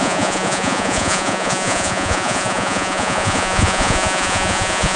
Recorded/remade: remade